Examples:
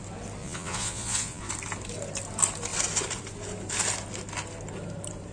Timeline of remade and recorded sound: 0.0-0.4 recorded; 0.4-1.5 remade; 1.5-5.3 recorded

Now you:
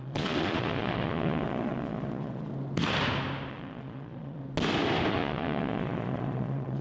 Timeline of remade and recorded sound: 0.0-2.5 remade; 2.5-3.5 recorded; 3.5-4.4 remade; 4.4-5.1 recorded; 5.1-6.8 remade

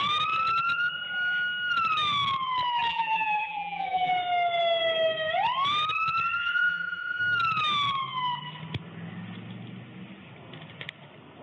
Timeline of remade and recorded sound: 0.0-2.9 recorded; 2.9-4.1 remade; 4.1-6.4 recorded; 6.4-7.2 remade; 7.2-11.4 recorded

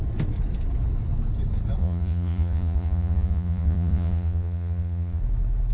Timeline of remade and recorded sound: 0.0-1.8 recorded; 1.8-5.2 remade; 5.2-5.7 recorded